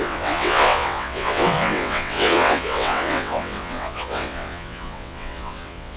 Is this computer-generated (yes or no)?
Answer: yes